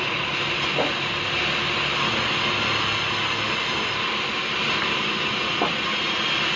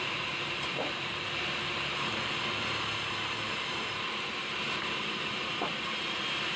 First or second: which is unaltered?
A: first